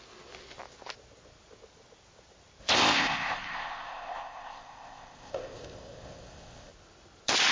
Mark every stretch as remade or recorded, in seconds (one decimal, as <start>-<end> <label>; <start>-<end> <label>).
0.0-2.6 recorded; 2.6-6.7 remade; 6.7-7.5 recorded